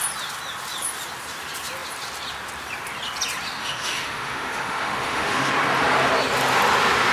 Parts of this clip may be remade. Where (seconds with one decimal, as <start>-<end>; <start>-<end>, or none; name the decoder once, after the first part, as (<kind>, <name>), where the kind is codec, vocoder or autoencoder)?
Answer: 3.6-5.5 (autoencoder, DAC-VAE)